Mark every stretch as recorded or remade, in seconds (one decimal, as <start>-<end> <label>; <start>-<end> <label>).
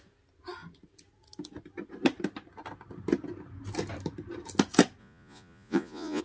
0.0-5.0 recorded; 5.0-6.2 remade